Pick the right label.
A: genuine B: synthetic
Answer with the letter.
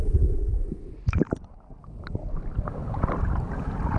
A